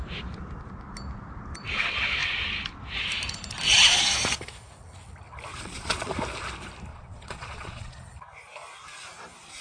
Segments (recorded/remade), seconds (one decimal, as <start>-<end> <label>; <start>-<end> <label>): 0.0-5.5 recorded; 5.5-6.1 remade; 6.1-6.9 recorded; 6.9-8.0 remade; 8.0-9.6 recorded